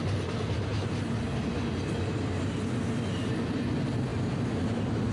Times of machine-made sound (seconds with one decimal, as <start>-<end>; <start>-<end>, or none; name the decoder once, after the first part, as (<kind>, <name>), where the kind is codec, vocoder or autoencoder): none